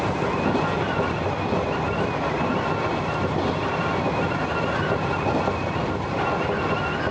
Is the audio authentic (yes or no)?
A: yes